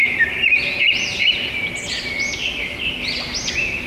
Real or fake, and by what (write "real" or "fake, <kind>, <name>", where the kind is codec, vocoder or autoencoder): real